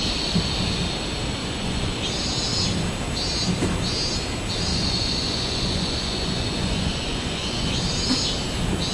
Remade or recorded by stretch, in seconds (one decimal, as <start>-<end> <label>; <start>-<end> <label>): 0.0-1.4 recorded; 1.4-2.0 remade; 2.0-4.7 recorded; 4.7-7.8 remade; 7.8-8.9 recorded